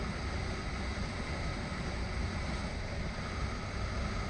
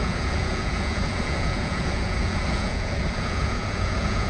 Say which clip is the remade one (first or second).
second